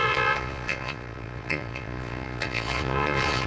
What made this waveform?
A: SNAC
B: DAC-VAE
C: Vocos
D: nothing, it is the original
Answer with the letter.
C